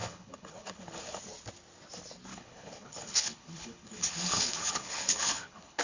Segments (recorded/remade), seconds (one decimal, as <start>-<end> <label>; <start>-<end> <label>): 0.0-1.2 remade; 1.2-2.3 recorded; 2.3-5.8 remade